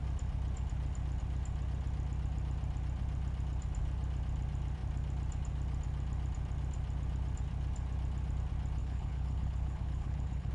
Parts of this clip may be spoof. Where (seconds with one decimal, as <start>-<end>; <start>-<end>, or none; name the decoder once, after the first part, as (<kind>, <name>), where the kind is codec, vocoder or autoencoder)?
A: 8.8-10.5 (codec, HILCodec)